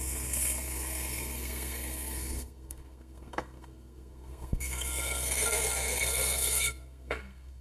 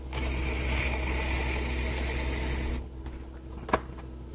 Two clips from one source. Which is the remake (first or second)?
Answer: first